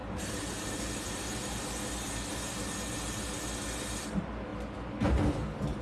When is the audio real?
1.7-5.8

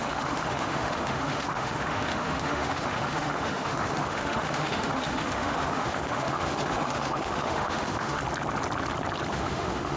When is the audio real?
8.2-9.3

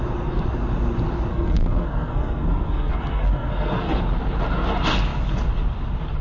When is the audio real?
0.0-1.3; 4.0-6.2

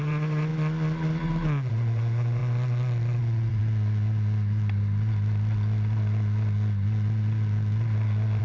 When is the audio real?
0.5-1.7; 2.4-3.2; 3.6-8.4

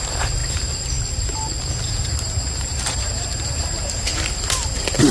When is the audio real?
0.4-1.8; 4.1-5.1

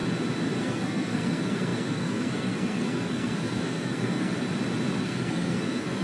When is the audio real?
0.0-0.6; 4.4-5.0

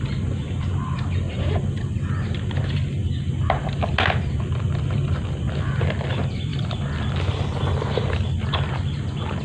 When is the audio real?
0.0-3.0; 3.8-9.4

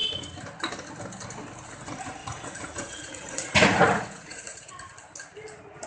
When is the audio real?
0.0-2.2; 4.7-5.9